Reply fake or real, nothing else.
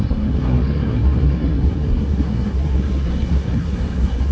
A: fake